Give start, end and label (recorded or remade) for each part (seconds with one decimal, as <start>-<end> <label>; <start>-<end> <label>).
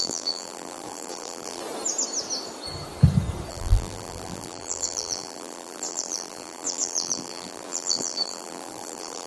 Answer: 0.0-1.6 remade; 1.6-3.5 recorded; 3.5-9.3 remade